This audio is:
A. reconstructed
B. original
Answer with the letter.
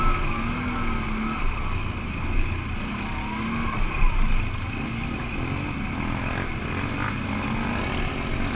B